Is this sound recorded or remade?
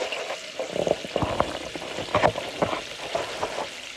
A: recorded